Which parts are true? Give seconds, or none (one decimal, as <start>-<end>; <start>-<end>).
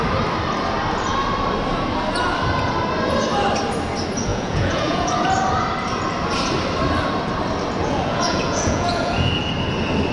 0.0-4.3; 5.1-7.8; 9.5-10.1